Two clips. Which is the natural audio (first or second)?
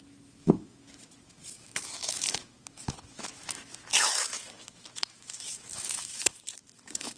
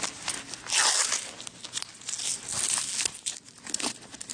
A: second